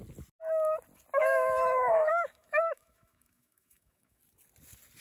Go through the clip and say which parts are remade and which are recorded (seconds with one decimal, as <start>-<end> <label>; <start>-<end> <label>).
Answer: 0.0-1.2 recorded; 1.2-4.2 remade; 4.2-5.0 recorded